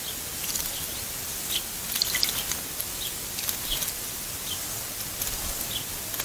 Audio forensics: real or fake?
real